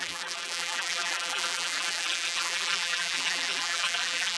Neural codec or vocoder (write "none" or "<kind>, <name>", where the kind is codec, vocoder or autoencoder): vocoder, BigVGAN v2